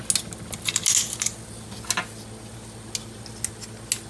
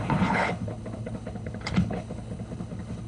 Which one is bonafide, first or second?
first